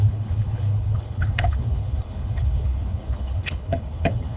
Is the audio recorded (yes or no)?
no